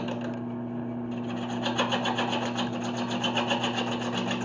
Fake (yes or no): no